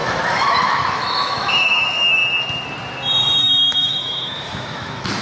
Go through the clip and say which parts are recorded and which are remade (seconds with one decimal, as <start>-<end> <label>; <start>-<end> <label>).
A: 0.0-2.2 remade; 2.2-3.4 recorded; 3.4-5.2 remade